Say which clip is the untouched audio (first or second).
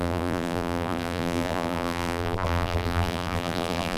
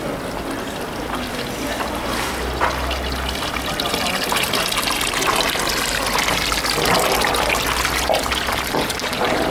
second